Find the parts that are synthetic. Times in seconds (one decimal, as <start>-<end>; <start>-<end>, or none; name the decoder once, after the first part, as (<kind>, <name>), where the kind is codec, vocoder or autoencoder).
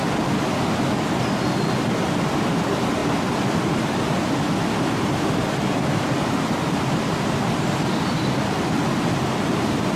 none